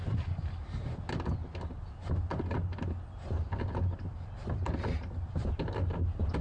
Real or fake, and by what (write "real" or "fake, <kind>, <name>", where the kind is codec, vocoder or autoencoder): real